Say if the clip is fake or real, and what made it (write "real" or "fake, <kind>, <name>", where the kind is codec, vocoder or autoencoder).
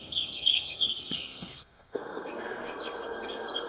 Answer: fake, codec, SNAC